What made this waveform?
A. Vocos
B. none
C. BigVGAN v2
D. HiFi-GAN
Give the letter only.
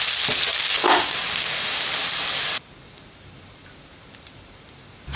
B